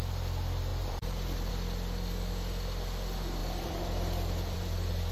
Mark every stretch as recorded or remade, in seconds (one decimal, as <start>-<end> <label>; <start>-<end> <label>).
0.0-0.7 recorded; 0.7-1.5 remade; 1.5-3.4 recorded; 3.4-5.1 remade